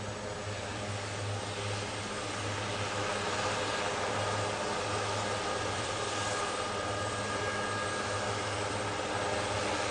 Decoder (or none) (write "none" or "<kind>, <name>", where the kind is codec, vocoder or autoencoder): none